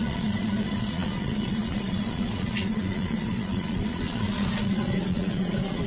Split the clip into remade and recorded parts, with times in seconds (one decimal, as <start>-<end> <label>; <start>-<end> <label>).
0.0-5.9 remade